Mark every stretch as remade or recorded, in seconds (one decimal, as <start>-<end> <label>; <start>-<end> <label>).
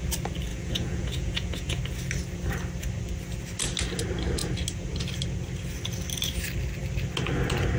0.0-0.5 recorded; 0.5-1.8 remade; 1.8-7.8 recorded